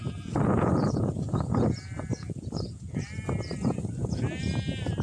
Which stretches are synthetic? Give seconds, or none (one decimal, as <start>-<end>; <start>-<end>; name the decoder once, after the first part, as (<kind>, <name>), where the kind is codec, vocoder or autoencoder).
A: 0.0-3.0 (vocoder, Vocos)